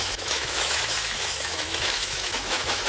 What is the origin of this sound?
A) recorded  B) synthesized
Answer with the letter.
B